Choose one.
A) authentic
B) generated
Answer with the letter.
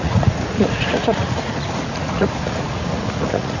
B